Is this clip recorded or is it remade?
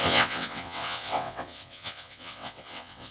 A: remade